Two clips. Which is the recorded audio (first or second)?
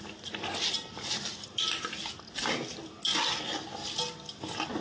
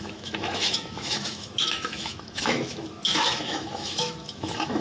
first